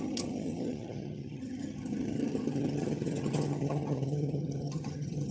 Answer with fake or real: fake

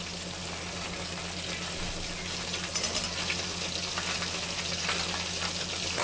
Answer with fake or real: real